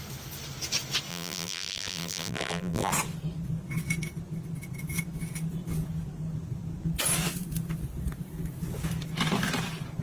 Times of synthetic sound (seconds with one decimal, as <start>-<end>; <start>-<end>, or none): 1.1-2.9

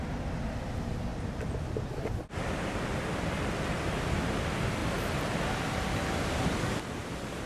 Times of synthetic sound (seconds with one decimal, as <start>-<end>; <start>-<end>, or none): 4.8-6.5; 7.0-7.5

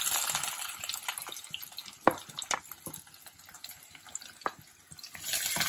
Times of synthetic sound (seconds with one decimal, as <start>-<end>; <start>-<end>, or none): none

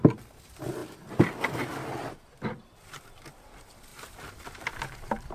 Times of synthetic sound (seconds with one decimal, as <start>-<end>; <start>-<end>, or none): 3.9-5.3